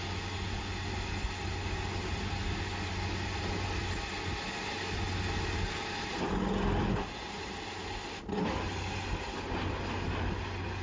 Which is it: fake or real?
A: real